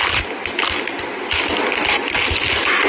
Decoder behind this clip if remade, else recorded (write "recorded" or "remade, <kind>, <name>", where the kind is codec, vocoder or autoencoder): recorded